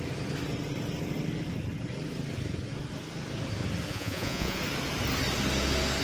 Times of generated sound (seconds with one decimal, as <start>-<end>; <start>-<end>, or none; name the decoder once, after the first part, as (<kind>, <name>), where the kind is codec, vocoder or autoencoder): 3.9-4.6 (vocoder, Vocos)